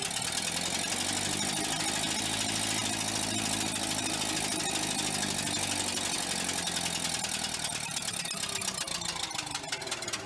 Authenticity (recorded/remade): recorded